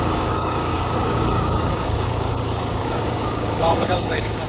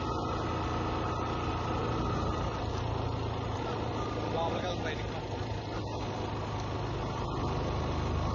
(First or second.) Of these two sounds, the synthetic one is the first